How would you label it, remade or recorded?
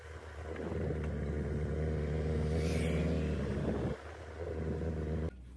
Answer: recorded